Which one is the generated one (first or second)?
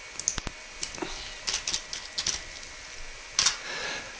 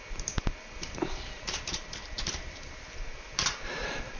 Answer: second